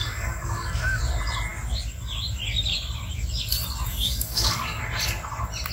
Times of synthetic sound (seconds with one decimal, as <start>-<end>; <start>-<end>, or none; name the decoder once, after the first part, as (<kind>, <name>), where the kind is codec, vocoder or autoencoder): 0.0-1.0 (codec, DAC); 3.9-4.8